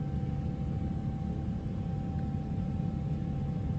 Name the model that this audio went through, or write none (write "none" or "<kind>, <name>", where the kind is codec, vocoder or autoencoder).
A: none